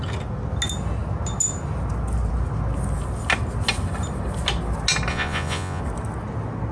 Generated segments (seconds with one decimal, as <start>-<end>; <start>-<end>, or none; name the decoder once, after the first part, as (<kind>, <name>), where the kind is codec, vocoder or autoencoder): 5.1-5.8 (vocoder, Vocos)